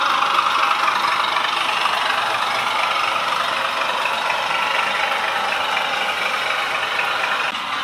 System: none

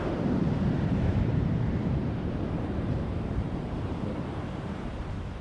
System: vocoder, BigVGAN v2